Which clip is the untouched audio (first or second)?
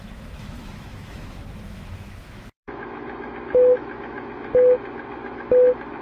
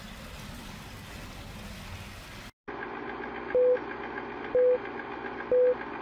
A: second